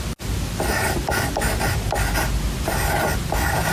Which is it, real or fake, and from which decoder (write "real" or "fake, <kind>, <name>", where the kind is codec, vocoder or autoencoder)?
real